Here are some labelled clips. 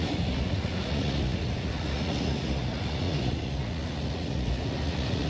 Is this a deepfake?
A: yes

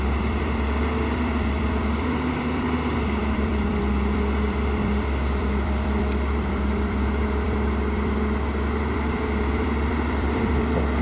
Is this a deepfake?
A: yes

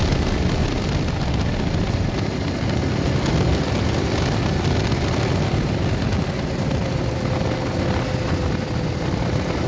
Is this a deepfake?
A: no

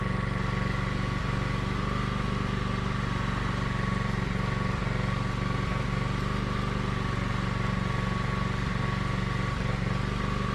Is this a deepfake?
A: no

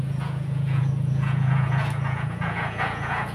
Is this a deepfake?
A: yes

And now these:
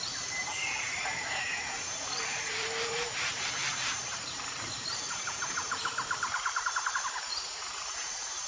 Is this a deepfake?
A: yes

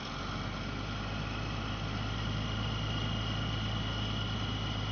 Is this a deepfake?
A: no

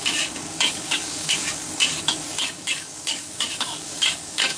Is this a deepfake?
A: yes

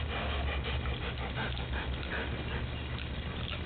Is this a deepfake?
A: no